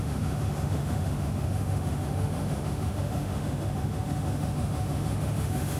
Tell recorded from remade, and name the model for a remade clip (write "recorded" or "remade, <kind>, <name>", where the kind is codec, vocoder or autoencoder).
remade, autoencoder, DAC-VAE